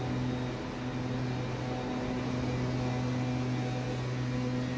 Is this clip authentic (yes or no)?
yes